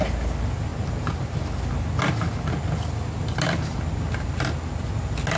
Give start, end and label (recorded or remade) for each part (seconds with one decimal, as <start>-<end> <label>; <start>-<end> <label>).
0.0-5.4 recorded